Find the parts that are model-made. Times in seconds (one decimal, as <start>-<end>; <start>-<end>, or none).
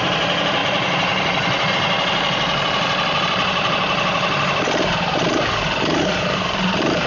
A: 0.0-7.1